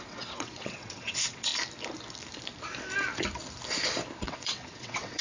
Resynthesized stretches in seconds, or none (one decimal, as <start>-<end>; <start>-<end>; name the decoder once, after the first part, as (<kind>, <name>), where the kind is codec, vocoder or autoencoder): 0.0-1.5 (vocoder, WaveNeXt); 4.2-5.2